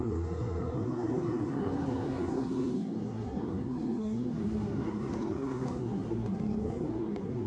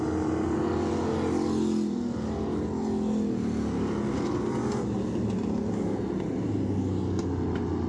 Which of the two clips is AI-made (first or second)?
first